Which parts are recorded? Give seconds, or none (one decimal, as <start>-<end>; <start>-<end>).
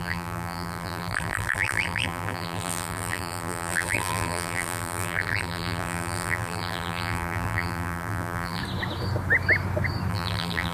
8.6-10.1